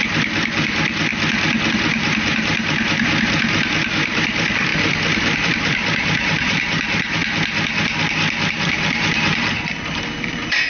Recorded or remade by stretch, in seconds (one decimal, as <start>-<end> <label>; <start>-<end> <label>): 0.0-1.1 remade; 1.1-1.7 recorded; 1.7-4.7 remade; 4.7-5.4 recorded; 5.4-7.2 remade; 7.2-8.5 recorded; 8.5-10.7 remade